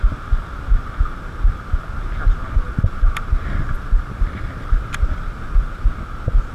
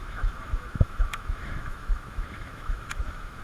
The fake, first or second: second